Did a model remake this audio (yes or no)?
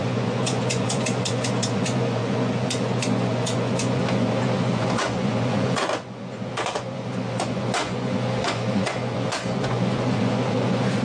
yes